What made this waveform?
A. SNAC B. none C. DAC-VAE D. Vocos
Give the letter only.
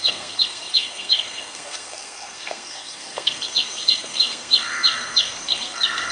A